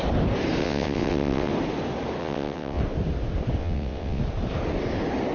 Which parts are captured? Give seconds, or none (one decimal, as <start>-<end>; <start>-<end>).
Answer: 0.0-0.6; 1.5-2.2; 2.8-3.6; 4.2-5.3